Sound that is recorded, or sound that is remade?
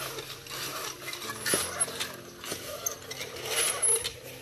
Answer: recorded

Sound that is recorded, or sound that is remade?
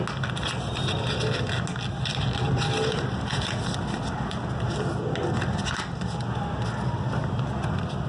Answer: recorded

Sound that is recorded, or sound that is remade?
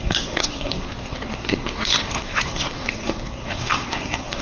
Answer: remade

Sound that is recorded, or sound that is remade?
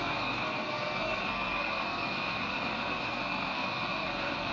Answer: remade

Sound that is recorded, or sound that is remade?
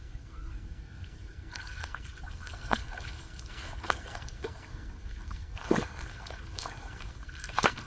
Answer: remade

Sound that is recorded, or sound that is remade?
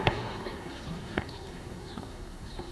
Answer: remade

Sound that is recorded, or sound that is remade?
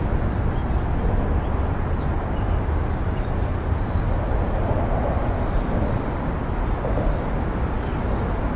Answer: recorded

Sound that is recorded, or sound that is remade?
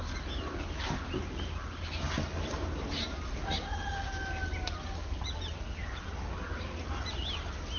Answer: recorded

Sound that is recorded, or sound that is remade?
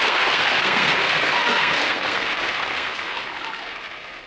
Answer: remade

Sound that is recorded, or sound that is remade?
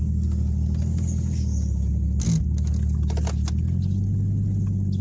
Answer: recorded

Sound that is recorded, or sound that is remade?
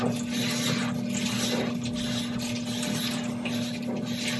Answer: recorded